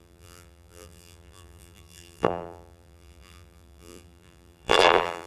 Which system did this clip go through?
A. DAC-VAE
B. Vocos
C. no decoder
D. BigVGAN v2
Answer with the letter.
D